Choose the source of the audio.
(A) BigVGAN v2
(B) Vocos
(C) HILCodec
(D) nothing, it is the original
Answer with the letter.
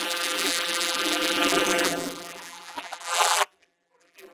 A